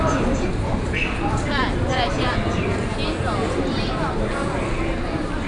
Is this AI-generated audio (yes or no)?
no